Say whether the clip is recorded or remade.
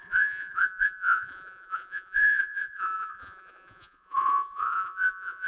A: remade